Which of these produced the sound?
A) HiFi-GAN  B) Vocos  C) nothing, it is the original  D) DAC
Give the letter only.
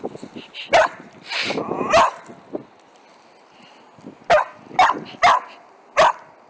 C